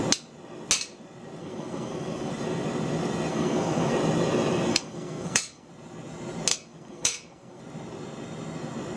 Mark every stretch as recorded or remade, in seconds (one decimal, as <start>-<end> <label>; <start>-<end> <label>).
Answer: 0.0-1.4 recorded; 1.4-2.3 remade; 2.3-3.3 recorded; 3.3-3.9 remade; 3.9-4.7 recorded; 4.7-5.7 remade; 5.7-6.5 recorded; 6.5-7.6 remade; 7.6-9.0 recorded